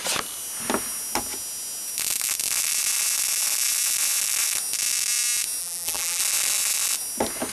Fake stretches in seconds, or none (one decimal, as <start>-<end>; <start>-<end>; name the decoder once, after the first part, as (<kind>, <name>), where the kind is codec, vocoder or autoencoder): 5.6-6.2 (vocoder, BigVGAN v2)